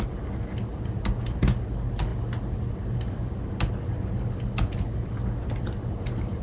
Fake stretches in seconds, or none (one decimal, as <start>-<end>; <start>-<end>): none